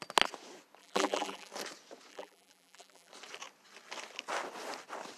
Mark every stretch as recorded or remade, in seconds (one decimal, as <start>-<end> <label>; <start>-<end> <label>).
0.0-0.8 recorded; 0.8-1.5 remade; 1.5-2.1 recorded; 2.1-3.1 remade; 3.1-5.2 recorded